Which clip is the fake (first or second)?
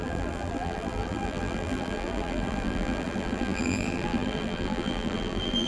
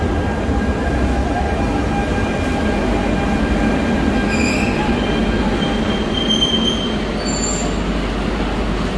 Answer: first